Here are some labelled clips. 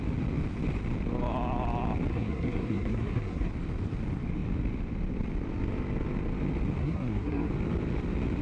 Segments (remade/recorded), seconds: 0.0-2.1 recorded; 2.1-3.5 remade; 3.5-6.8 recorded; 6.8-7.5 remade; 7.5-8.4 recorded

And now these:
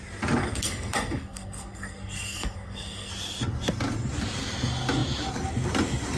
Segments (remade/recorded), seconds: 0.0-0.4 recorded; 0.4-3.1 remade; 3.1-6.2 recorded

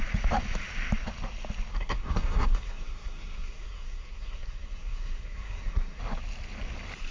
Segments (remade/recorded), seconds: 0.0-1.7 recorded; 1.7-6.0 remade; 6.0-7.1 recorded

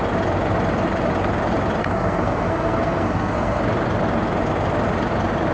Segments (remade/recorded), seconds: 0.0-1.8 recorded; 1.8-3.6 remade; 3.6-5.5 recorded

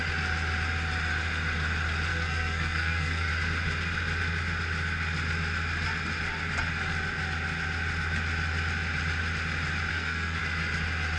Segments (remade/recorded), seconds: 0.0-2.1 recorded; 2.1-3.3 remade; 3.3-9.9 recorded; 9.9-10.4 remade; 10.4-11.2 recorded

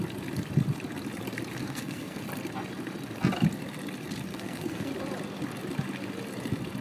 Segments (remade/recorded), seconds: 0.0-1.6 recorded; 1.6-2.2 remade; 2.2-4.3 recorded; 4.3-4.9 remade; 4.9-6.8 recorded

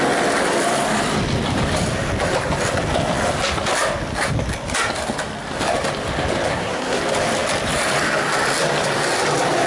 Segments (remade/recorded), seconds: 0.0-6.5 recorded; 6.5-7.0 remade; 7.0-9.7 recorded